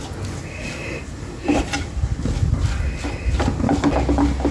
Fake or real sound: real